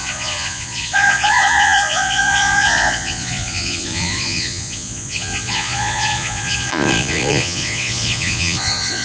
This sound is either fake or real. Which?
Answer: fake